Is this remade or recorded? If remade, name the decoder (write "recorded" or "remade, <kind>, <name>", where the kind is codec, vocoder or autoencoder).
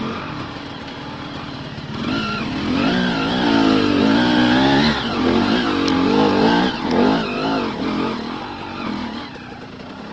recorded